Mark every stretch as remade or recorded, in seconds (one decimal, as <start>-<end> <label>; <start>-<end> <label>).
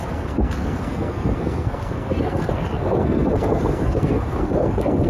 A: 0.0-5.1 remade